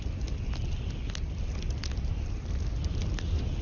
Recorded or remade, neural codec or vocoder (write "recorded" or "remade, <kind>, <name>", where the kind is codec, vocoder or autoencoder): recorded